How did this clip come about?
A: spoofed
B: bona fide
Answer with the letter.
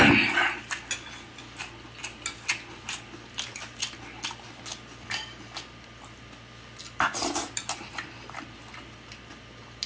B